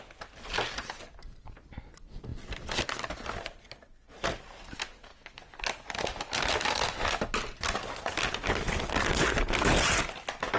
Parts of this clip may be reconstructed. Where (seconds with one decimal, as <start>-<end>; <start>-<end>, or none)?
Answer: none